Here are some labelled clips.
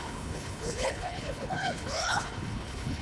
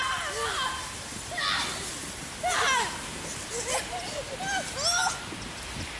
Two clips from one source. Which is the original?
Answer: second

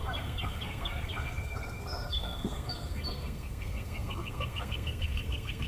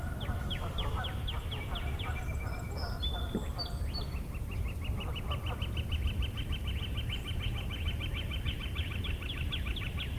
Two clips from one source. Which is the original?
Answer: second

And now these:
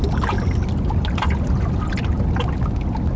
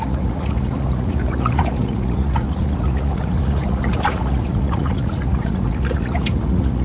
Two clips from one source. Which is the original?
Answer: first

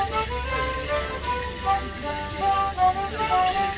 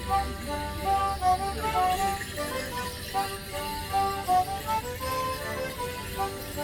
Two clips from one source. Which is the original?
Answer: second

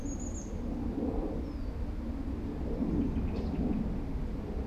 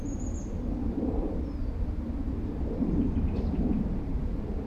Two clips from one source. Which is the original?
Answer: first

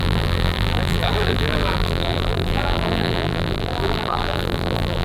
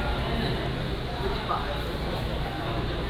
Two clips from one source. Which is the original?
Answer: second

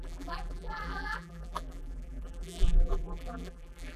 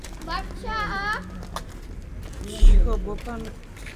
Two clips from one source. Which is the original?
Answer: second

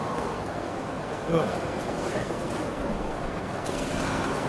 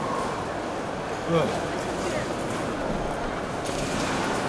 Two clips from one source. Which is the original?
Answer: second